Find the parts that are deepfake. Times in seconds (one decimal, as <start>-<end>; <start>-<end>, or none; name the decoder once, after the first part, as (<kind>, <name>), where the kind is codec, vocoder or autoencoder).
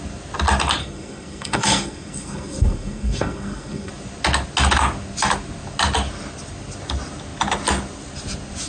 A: 0.8-3.9 (codec, SNAC)